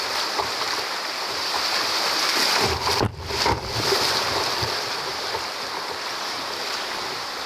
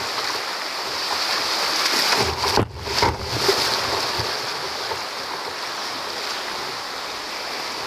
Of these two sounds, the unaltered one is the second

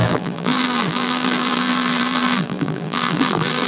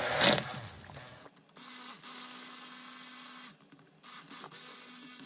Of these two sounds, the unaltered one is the second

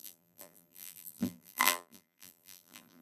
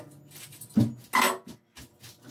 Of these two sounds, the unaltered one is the second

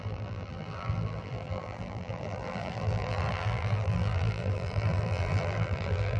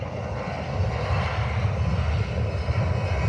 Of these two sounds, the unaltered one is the second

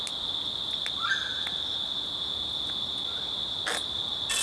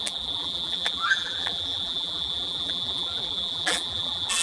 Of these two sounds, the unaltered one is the first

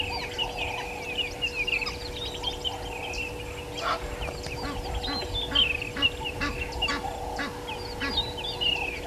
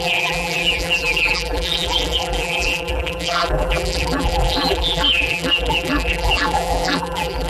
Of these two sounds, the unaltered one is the first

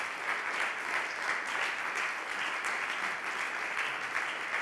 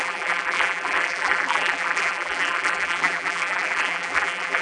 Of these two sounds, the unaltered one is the first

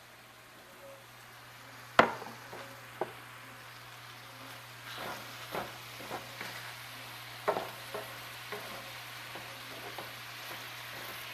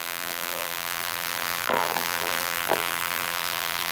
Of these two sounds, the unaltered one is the first